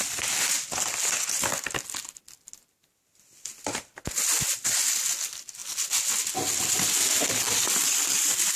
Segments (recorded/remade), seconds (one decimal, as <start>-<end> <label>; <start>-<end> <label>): 0.0-8.6 recorded